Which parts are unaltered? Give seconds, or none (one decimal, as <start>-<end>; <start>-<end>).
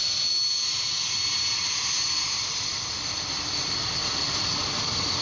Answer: 0.0-5.2